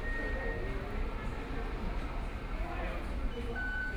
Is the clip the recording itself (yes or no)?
yes